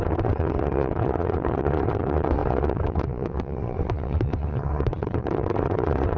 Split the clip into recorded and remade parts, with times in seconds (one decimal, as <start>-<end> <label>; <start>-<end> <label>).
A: 0.0-6.2 remade